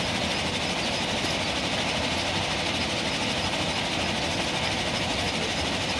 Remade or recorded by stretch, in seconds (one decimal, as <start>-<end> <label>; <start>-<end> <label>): 0.0-6.0 recorded